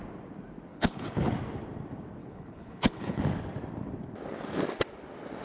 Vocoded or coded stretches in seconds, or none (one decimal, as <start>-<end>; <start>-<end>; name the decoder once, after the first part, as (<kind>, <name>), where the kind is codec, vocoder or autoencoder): 0.7-1.3 (codec, HILCodec); 2.2-3.2